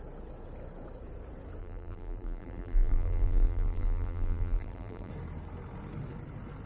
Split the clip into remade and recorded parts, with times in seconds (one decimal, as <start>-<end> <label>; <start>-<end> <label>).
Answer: 0.0-1.6 recorded; 1.6-5.1 remade; 5.1-6.7 recorded